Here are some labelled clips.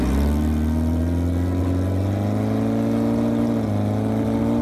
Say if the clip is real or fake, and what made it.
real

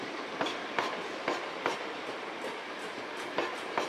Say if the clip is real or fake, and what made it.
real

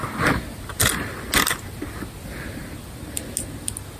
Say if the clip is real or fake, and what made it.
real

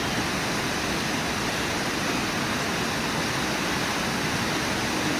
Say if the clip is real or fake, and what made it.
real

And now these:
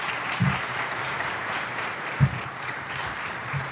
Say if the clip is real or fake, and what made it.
fake, vocoder, BigVGAN v2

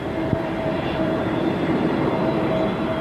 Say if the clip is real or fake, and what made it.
fake, vocoder, BigVGAN v2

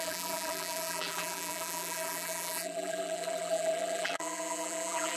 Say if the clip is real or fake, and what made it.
fake, vocoder, BigVGAN v2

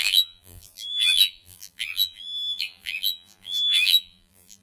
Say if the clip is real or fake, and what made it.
fake, vocoder, BigVGAN v2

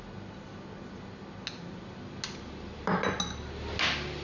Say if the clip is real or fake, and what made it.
real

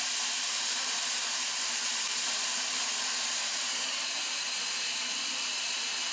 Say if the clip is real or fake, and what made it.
fake, vocoder, BigVGAN v2